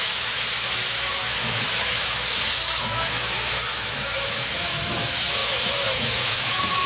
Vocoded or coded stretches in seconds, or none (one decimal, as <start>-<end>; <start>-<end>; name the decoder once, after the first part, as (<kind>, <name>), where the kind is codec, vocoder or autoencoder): 0.0-6.9 (autoencoder, DAC-VAE)